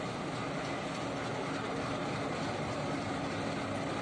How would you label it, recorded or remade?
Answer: recorded